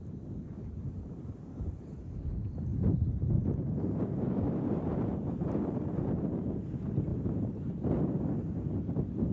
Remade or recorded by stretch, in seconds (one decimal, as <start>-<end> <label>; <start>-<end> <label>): 0.0-2.7 recorded; 2.7-3.3 remade; 3.3-7.1 recorded; 7.1-7.8 remade; 7.8-9.3 recorded